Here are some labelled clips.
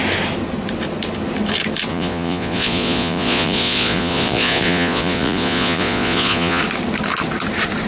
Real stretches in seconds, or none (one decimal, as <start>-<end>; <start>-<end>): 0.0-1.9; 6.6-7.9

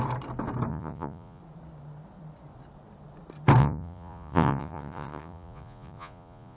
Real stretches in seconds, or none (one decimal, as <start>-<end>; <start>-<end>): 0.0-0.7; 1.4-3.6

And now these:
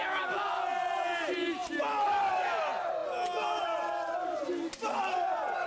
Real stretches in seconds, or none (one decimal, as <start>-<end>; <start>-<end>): 0.0-5.7

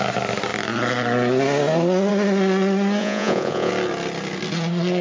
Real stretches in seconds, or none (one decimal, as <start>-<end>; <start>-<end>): 0.0-3.0; 3.7-5.0